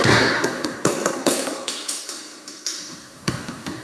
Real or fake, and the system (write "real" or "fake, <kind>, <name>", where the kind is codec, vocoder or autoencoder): fake, codec, SNAC